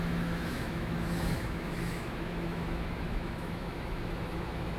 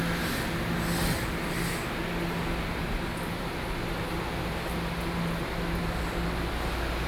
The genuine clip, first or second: second